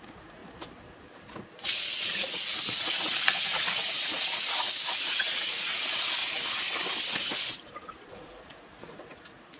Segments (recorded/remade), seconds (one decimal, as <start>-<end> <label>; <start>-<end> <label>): 0.0-0.4 remade; 0.4-1.4 recorded; 1.4-6.2 remade; 6.2-8.1 recorded; 8.1-9.6 remade